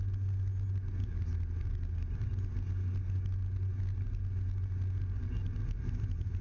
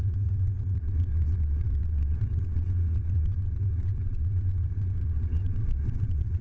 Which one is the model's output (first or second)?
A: second